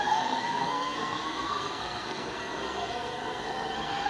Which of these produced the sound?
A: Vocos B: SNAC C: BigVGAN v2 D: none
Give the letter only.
B